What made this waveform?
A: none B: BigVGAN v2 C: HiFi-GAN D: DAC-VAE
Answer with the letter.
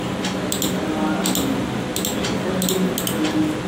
A